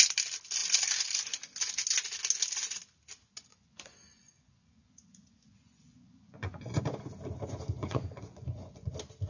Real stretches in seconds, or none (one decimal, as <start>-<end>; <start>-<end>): 0.0-3.5; 6.8-7.8; 8.9-9.3